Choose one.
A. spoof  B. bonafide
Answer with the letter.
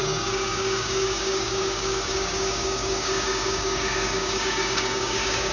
A